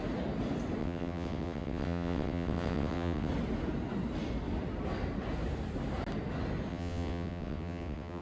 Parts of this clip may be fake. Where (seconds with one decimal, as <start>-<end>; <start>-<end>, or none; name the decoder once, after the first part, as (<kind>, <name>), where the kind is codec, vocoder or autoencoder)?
0.8-3.3 (vocoder, WaveNeXt); 6.7-8.2